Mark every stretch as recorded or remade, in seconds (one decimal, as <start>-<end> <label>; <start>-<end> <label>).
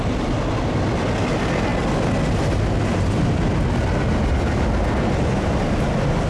0.0-6.3 recorded